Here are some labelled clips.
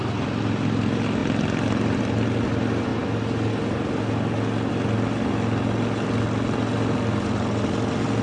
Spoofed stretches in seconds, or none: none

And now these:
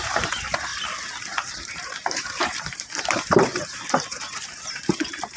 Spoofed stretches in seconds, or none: 0.0-0.7 (vocoder, BigVGAN v2); 1.3-5.4

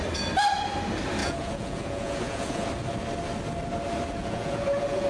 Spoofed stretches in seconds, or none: 1.2-2.7 (vocoder, Vocos); 4.2-5.1

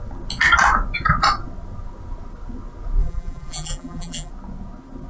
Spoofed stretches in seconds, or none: 3.0-4.3 (vocoder, BigVGAN v2)

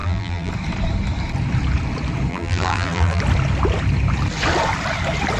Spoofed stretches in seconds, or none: 0.0-0.5 (vocoder, BigVGAN v2); 2.3-3.2

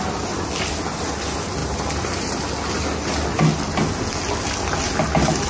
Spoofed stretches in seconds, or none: 1.6-2.4 (vocoder, BigVGAN v2)

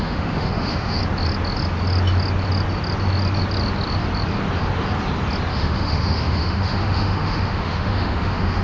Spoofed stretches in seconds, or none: 0.0-1.0 (autoencoder, DAC-VAE); 5.5-8.6

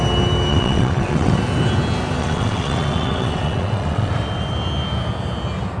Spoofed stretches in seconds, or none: 0.5-1.4 (vocoder, WaveNeXt); 2.2-4.1